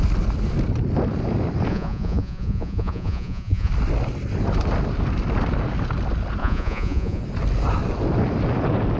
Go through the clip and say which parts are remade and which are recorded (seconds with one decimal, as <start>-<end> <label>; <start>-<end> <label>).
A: 0.0-1.7 recorded; 1.7-3.7 remade; 3.7-6.4 recorded; 6.4-7.2 remade; 7.2-9.0 recorded